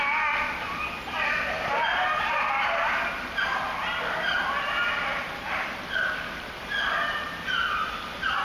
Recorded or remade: recorded